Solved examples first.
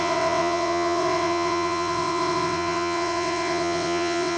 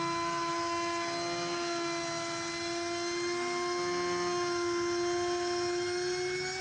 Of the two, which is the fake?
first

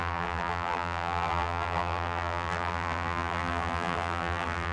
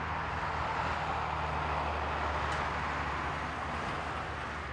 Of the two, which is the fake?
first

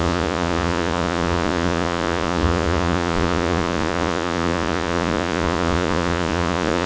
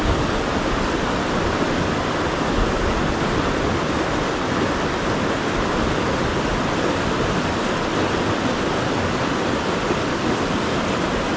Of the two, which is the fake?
first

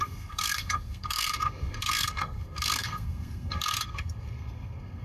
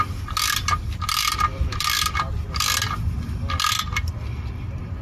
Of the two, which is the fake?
first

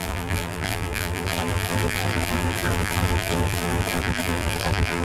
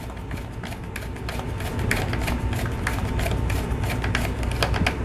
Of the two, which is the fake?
first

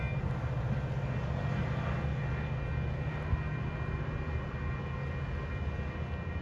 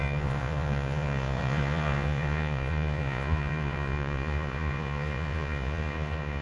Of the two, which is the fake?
second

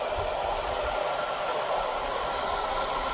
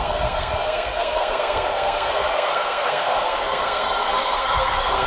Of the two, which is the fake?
second